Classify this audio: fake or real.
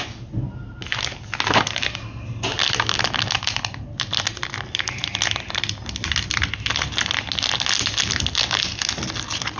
real